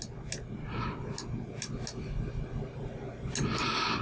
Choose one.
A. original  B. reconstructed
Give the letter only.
A